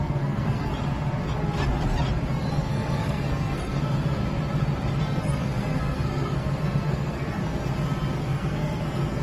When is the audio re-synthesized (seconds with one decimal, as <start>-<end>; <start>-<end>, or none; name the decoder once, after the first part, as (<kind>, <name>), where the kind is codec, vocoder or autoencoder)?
0.0-0.7 (codec, SNAC); 2.5-4.2; 5.0-7.4; 8.2-9.2